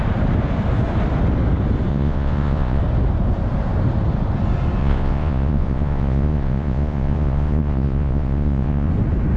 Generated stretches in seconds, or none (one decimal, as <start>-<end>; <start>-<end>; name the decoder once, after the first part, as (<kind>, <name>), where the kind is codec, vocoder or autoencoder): 1.9-2.8 (vocoder, Vocos); 4.8-8.9